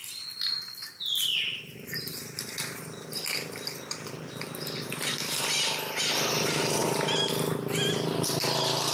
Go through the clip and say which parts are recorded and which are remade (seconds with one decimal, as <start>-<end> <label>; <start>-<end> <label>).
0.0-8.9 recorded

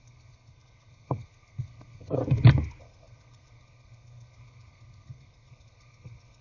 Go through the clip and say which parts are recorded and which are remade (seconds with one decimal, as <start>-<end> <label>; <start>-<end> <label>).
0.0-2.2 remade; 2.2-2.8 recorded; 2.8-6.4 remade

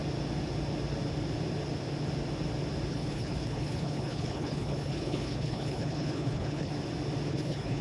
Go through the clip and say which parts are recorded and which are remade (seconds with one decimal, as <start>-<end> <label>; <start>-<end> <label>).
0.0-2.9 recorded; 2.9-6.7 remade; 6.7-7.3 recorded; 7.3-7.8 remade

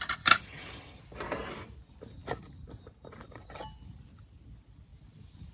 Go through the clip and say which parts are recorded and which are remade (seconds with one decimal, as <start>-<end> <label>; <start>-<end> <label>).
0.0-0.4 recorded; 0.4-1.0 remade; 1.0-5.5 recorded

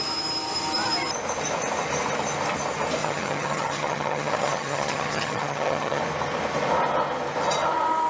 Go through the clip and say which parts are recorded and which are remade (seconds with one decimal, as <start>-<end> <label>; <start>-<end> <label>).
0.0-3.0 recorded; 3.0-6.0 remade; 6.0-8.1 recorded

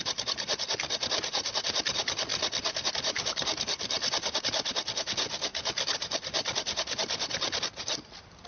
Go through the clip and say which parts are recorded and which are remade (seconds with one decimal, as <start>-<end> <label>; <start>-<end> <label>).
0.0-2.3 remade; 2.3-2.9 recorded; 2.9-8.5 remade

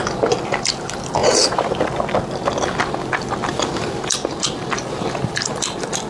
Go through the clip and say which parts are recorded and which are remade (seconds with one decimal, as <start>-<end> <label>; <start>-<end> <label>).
0.0-6.1 recorded